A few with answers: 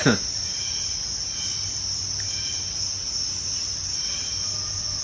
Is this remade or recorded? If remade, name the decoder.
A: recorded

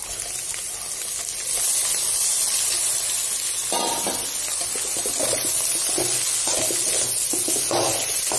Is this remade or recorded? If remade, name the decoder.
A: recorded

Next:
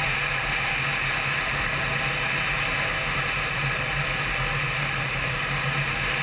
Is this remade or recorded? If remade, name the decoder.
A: recorded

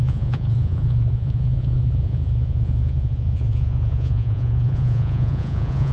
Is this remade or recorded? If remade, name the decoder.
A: remade, vocoder, Vocos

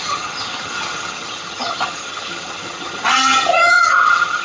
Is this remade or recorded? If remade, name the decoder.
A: remade, vocoder, HiFi-GAN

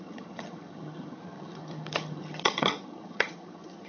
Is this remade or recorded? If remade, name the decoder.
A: remade, vocoder, HiFi-GAN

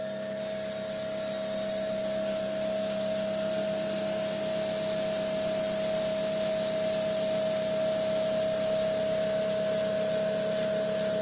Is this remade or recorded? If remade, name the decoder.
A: recorded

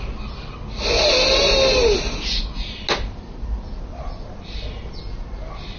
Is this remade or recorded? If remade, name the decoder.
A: recorded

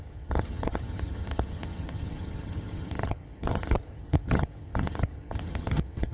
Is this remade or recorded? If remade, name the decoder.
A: remade, vocoder, HiFi-GAN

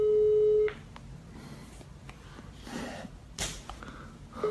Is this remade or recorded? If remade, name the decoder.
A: recorded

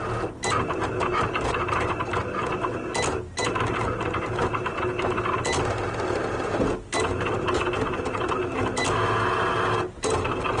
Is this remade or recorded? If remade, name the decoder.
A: recorded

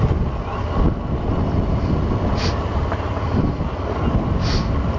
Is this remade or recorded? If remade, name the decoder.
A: recorded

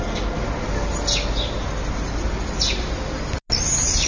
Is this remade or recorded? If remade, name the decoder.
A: recorded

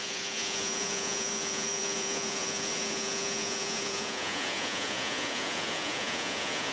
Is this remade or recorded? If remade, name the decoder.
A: remade, vocoder, Vocos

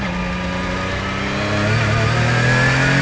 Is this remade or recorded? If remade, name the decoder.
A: recorded